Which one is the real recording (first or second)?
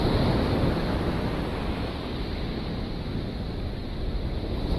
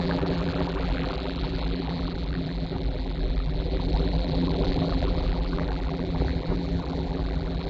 first